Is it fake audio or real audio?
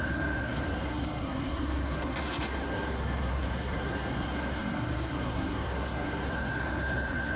fake